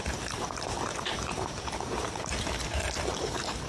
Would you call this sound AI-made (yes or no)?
no